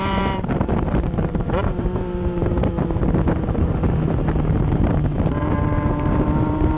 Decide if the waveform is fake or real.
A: fake